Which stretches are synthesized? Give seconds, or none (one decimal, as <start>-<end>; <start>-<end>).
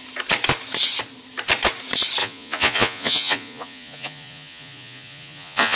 2.2-5.8